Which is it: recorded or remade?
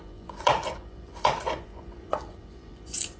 remade